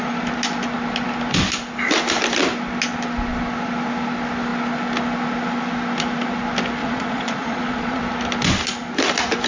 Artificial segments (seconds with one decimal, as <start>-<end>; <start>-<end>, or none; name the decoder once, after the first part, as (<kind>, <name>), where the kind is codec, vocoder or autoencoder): 6.8-8.0 (vocoder, Vocos)